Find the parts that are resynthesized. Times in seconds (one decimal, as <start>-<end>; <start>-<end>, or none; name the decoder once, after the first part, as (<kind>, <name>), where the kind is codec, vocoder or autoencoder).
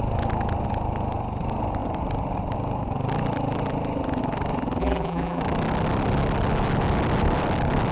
4.8-5.4 (vocoder, BigVGAN v2)